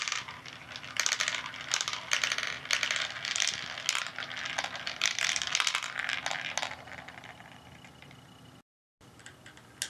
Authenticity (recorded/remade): recorded